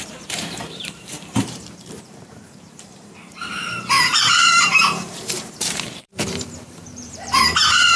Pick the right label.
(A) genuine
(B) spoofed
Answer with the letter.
B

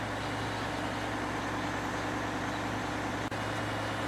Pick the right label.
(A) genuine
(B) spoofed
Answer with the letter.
A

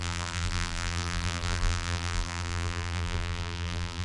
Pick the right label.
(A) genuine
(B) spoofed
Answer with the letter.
B